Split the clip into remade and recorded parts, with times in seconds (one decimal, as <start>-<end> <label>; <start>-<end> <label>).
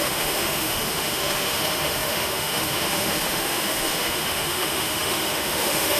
0.0-6.0 remade